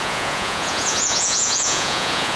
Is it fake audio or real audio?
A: fake